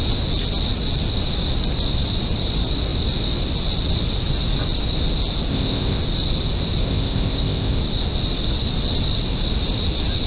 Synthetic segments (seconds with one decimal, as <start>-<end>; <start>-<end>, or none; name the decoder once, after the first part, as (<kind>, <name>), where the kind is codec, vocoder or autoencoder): 5.5-6.0 (codec, ZipCodec); 6.8-7.8